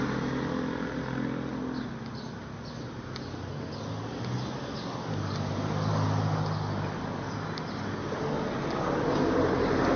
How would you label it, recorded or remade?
recorded